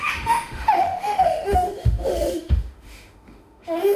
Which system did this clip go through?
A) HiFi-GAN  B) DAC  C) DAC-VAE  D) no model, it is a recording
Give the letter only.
C